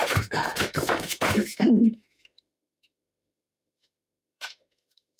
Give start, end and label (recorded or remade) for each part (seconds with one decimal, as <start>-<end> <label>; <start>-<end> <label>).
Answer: 0.0-5.2 remade